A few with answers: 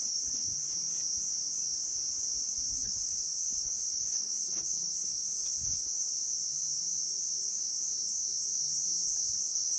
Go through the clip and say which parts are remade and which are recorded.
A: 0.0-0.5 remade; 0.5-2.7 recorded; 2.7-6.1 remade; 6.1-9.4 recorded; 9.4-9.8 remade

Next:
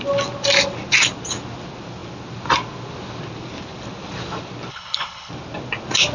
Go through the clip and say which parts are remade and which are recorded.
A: 0.0-4.7 recorded; 4.7-5.3 remade; 5.3-6.1 recorded

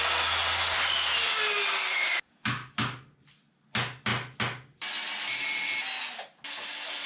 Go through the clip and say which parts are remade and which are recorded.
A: 0.0-7.1 recorded

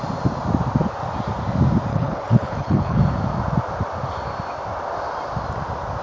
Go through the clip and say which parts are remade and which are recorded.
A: 0.0-1.9 recorded; 1.9-3.0 remade; 3.0-6.0 recorded

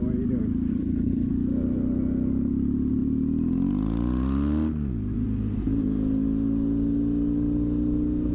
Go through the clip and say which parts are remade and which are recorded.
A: 0.0-0.7 recorded; 0.7-1.3 remade; 1.3-8.3 recorded

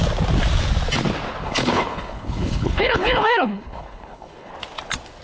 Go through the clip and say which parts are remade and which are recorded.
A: 0.0-1.4 recorded; 1.4-4.5 remade; 4.5-5.2 recorded